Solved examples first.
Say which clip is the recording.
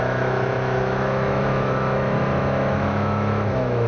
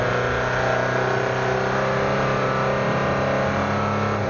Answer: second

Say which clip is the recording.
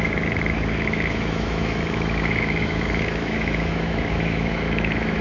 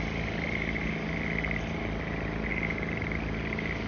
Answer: second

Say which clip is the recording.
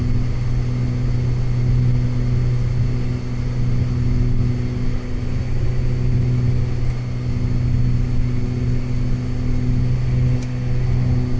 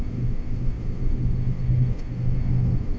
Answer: first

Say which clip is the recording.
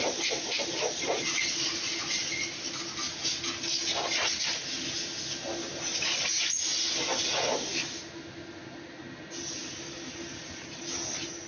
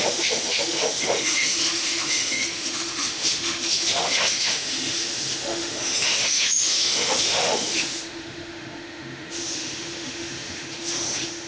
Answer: first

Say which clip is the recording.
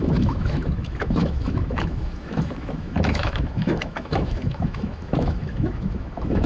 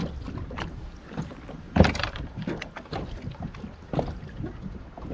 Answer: second